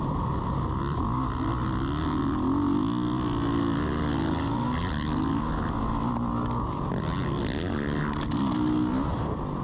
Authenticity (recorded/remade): recorded